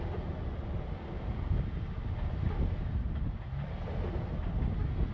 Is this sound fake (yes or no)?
no